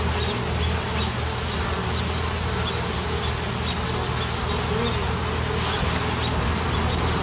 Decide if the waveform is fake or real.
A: real